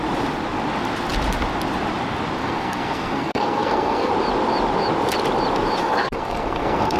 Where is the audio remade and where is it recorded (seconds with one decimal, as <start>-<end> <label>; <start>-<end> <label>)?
0.0-2.4 recorded; 2.4-4.1 remade; 4.1-5.8 recorded; 5.8-7.0 remade